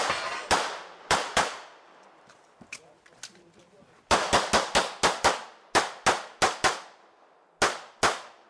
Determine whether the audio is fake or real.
real